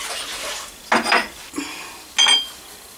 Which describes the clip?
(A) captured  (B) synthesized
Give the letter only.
A